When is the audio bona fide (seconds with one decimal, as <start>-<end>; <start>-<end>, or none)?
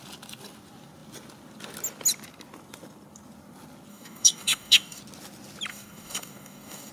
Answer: 0.0-3.9; 5.0-5.7